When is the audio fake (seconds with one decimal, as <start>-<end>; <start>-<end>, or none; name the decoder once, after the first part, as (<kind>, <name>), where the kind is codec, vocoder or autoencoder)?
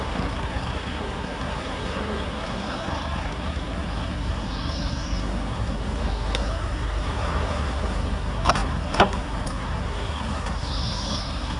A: 0.0-11.6 (codec, SNAC)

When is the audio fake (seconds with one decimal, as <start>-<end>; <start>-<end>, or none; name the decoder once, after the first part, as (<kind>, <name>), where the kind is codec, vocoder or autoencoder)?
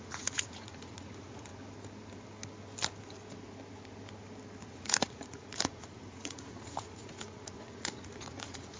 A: 0.0-1.5 (vocoder, Vocos); 4.7-8.8